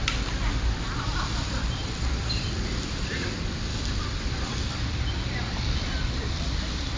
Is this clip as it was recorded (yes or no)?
no